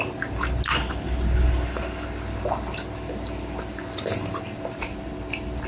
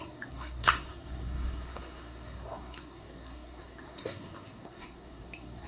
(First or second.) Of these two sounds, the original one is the first